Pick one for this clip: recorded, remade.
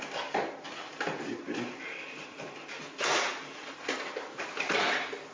recorded